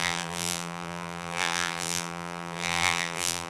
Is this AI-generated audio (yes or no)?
yes